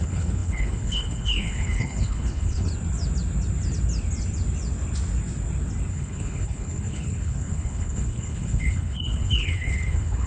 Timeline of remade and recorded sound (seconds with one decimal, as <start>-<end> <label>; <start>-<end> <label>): 0.0-2.7 remade; 2.7-5.9 recorded; 5.9-10.3 remade